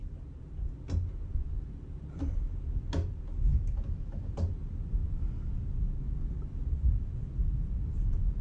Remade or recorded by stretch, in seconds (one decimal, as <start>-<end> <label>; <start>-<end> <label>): 0.0-3.5 recorded; 3.5-4.3 remade; 4.3-8.4 recorded